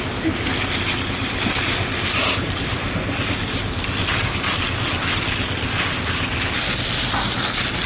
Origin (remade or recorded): recorded